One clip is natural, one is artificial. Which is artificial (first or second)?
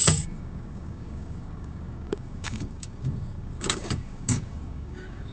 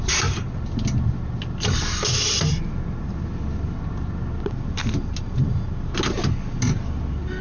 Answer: first